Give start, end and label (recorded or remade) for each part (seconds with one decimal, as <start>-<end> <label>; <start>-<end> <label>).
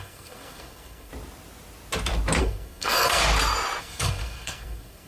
0.0-1.1 remade; 1.1-2.4 recorded; 2.4-3.2 remade; 3.2-3.8 recorded; 3.8-5.1 remade